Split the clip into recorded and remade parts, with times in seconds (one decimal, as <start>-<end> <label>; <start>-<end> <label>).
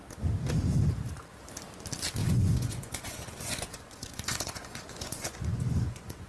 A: 0.0-2.2 recorded; 2.2-6.3 remade